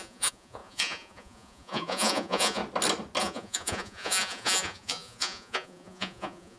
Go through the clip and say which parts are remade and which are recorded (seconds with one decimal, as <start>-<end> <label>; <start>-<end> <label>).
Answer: 0.0-2.6 remade; 2.6-3.2 recorded; 3.2-6.6 remade